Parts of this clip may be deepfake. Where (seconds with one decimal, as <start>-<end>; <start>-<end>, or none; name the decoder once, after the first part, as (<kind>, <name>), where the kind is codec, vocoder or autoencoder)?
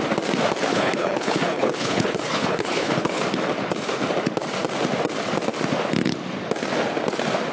0.7-3.2 (codec, HILCodec)